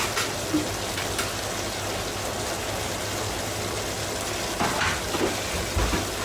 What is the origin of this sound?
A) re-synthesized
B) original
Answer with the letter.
B